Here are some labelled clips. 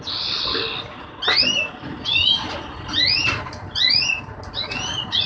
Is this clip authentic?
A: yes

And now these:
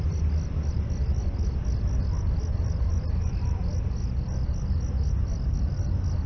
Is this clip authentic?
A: yes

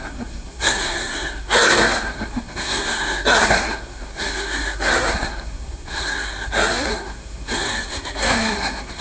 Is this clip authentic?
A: no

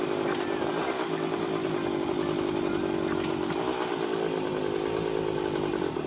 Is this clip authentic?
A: yes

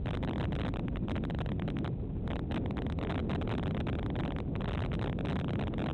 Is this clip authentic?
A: yes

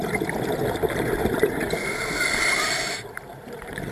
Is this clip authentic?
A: yes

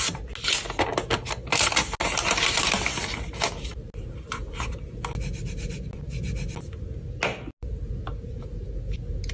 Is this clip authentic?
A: yes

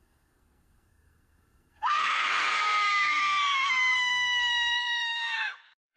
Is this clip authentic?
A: no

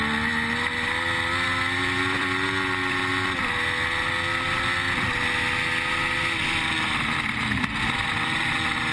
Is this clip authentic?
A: yes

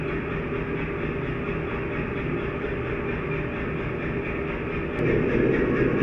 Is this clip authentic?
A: yes